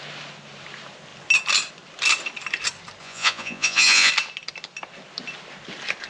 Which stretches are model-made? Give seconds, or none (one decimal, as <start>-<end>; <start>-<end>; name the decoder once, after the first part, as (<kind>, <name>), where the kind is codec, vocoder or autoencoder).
3.0-4.1 (vocoder, Vocos)